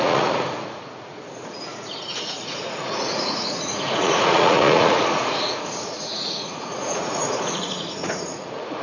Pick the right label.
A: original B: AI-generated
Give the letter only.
B